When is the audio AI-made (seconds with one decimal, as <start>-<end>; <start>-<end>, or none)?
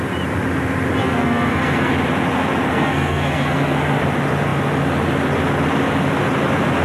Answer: 1.0-1.9; 2.7-4.0